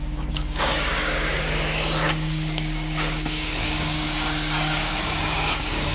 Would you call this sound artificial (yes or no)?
yes